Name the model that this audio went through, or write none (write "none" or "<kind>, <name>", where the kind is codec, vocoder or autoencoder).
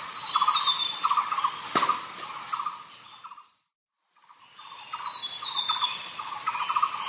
none